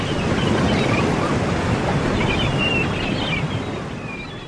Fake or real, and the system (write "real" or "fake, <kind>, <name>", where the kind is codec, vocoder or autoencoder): real